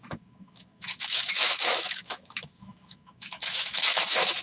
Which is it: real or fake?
fake